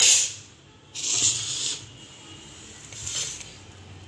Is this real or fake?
real